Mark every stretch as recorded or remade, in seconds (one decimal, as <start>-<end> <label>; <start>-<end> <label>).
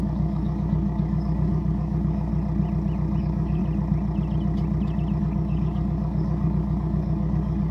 0.0-2.3 remade; 2.3-3.2 recorded; 3.2-3.6 remade; 3.6-5.2 recorded; 5.2-7.7 remade